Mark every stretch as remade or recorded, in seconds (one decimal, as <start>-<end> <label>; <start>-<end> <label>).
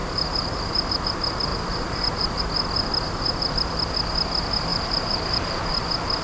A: 0.0-1.1 remade; 1.1-1.5 recorded; 1.5-2.4 remade; 2.4-4.7 recorded; 4.7-5.7 remade; 5.7-6.2 recorded